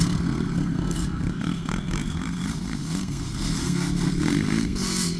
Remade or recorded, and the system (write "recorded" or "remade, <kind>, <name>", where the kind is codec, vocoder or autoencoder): remade, codec, SNAC